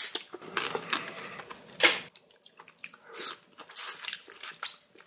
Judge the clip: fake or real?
real